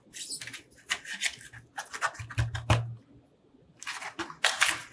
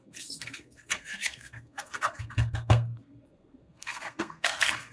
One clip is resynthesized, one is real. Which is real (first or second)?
first